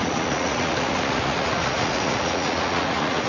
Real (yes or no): no